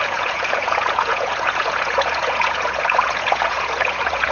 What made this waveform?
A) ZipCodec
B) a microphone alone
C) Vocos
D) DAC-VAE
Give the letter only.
C